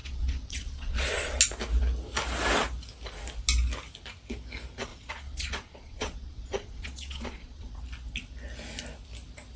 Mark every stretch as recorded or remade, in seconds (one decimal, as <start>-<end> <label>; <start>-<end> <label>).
0.0-1.4 remade; 1.4-4.9 recorded; 4.9-7.8 remade; 7.8-9.6 recorded